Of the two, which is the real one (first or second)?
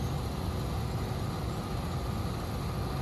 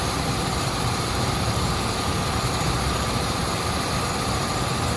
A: first